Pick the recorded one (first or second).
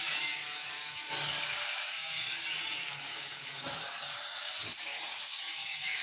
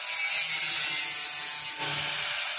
second